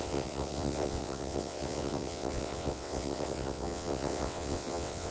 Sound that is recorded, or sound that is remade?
remade